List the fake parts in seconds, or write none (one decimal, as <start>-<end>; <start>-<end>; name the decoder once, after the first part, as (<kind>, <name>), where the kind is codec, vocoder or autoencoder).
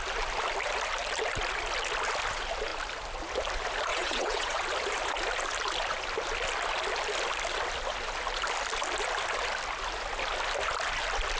3.9-4.6 (vocoder, WaveNeXt)